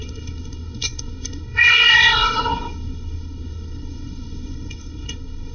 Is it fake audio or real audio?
fake